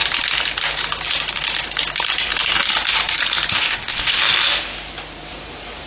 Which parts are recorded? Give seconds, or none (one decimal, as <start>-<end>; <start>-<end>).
0.0-3.5; 4.2-5.9